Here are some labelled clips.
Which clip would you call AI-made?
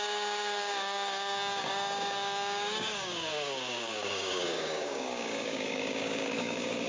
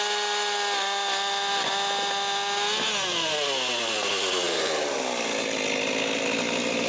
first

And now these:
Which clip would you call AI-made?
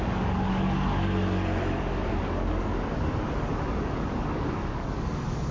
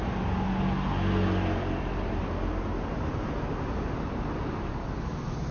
first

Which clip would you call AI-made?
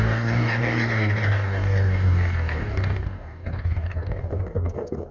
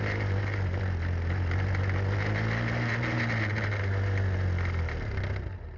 first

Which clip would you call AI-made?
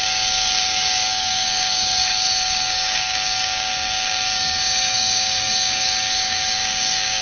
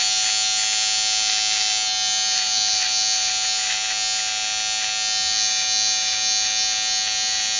first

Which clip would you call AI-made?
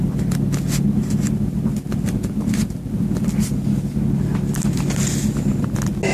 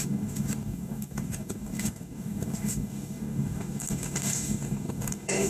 second